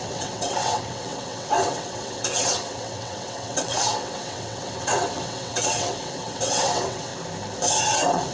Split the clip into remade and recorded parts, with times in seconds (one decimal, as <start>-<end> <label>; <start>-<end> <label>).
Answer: 0.0-7.1 remade; 7.1-7.8 recorded; 7.8-8.3 remade